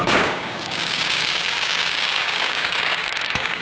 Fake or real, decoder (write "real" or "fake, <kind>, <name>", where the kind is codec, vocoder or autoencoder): fake, codec, DAC